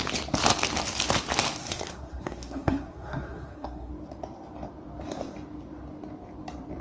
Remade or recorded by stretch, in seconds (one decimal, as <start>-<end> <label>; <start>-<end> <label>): 0.0-1.6 recorded; 1.6-3.9 remade; 3.9-6.8 recorded

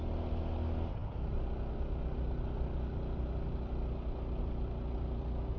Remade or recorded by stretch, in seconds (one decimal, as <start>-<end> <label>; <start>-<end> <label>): 0.0-5.6 recorded

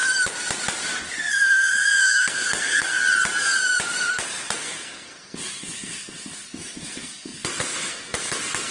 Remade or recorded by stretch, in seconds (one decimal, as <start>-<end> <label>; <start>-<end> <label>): 0.0-1.3 recorded; 1.3-3.0 remade; 3.0-4.1 recorded; 4.1-8.7 remade